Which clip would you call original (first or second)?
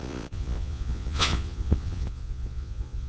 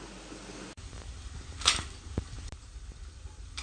second